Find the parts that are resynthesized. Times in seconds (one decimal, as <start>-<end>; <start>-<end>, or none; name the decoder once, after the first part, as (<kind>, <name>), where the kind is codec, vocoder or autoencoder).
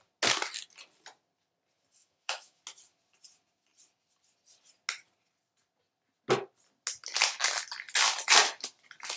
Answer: 2.0-2.6 (autoencoder, DAC-VAE)